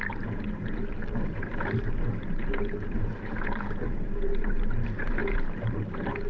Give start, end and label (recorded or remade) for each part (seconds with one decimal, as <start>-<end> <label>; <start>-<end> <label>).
0.0-6.3 remade